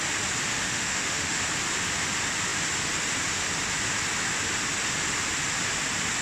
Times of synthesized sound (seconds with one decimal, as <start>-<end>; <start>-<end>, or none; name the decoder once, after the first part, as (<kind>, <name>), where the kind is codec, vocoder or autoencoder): 0.5-1.4 (autoencoder, DAC-VAE)